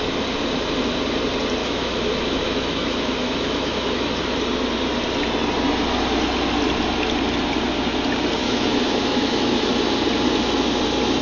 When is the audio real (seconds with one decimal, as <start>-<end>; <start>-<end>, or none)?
0.0-1.6; 4.2-8.4; 9.7-11.2